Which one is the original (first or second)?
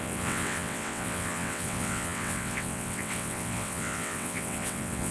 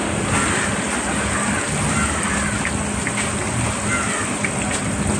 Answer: second